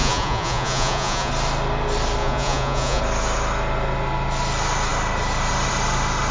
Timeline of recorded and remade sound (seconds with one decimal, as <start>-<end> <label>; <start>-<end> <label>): 0.0-1.3 remade; 1.3-2.2 recorded; 2.2-3.0 remade; 3.0-6.3 recorded